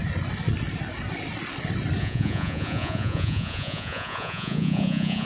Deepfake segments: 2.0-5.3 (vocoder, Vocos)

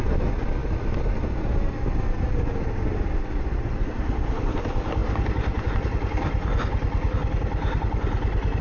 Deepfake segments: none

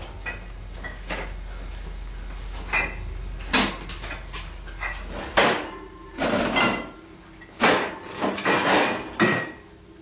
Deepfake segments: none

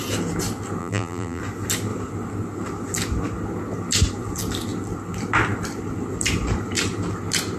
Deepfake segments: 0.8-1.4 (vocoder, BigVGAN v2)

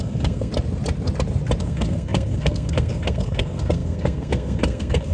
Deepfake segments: 0.0-0.5 (codec, SNAC); 1.6-5.1